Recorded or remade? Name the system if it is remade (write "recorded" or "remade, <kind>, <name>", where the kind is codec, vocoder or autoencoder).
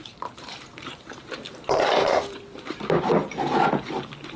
remade, vocoder, BigVGAN v2